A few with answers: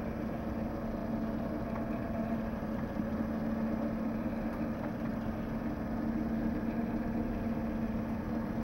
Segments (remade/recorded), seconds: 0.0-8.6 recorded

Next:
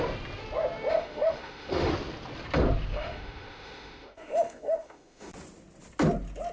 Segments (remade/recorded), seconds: 0.0-0.9 recorded; 0.9-1.9 remade; 1.9-2.9 recorded; 2.9-5.3 remade; 5.3-6.5 recorded

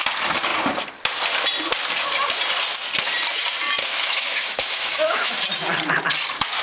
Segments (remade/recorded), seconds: 0.0-3.8 recorded; 3.8-5.3 remade; 5.3-6.6 recorded

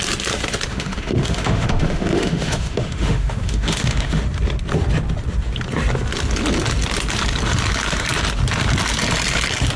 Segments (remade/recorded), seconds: 0.0-0.7 recorded; 0.7-4.2 remade; 4.2-9.8 recorded

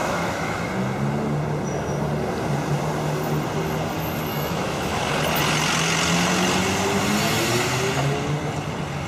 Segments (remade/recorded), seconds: 0.0-0.7 remade; 0.7-4.3 recorded; 4.3-5.0 remade; 5.0-9.1 recorded

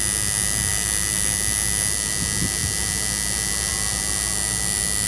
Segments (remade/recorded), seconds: 0.0-5.1 recorded

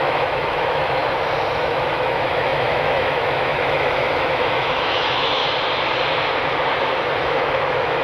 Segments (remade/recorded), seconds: 0.0-1.0 remade; 1.0-1.6 recorded; 1.6-5.4 remade; 5.4-7.2 recorded; 7.2-8.0 remade

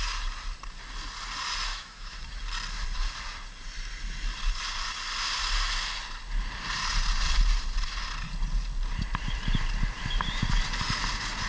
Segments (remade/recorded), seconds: 0.0-1.7 recorded; 1.7-2.2 remade; 2.2-11.5 recorded